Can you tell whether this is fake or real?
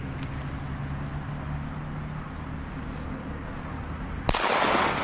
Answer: real